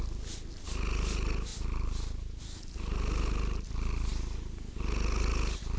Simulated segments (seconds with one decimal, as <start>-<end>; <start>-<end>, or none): none